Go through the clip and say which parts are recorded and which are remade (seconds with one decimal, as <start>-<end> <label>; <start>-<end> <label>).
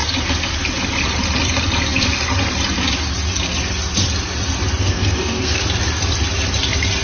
0.0-4.8 recorded; 4.8-5.6 remade; 5.6-7.0 recorded